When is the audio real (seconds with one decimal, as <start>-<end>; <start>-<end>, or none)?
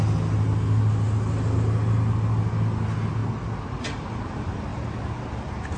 0.0-5.8